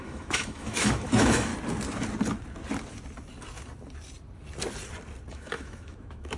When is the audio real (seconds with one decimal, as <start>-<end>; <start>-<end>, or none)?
1.5-5.3